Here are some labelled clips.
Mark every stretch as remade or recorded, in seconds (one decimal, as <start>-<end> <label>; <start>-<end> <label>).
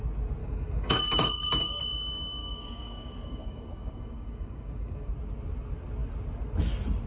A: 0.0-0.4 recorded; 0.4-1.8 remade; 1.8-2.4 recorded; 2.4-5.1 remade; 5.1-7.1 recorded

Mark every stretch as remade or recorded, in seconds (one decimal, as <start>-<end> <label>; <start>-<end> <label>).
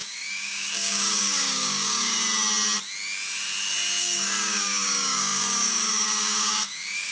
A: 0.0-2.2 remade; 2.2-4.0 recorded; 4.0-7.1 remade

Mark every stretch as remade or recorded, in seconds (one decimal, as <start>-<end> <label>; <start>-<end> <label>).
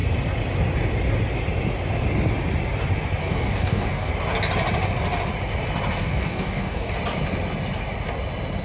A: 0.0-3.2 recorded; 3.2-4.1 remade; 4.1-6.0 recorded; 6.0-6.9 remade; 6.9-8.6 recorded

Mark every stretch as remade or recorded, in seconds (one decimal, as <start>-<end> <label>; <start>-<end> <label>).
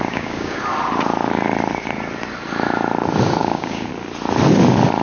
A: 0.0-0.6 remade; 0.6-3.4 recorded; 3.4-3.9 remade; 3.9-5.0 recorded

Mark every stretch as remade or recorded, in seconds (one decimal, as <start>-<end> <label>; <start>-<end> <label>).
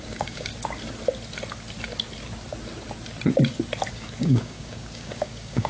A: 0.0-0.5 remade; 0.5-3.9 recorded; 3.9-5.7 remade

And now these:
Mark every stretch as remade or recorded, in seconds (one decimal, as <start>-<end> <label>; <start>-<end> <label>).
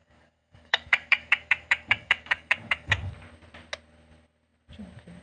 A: 0.0-3.1 remade; 3.1-5.2 recorded